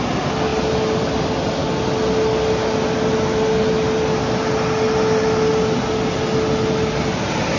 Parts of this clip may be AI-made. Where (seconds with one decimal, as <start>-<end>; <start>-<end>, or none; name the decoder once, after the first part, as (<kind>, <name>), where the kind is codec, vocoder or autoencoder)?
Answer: none